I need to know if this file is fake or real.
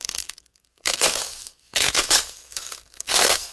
fake